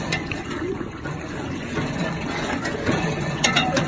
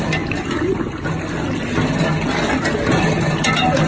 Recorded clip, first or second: second